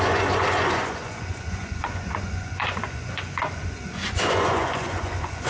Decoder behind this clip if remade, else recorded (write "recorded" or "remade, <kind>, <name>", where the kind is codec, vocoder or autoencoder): remade, vocoder, Vocos